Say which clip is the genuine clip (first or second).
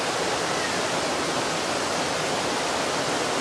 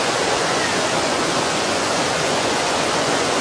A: first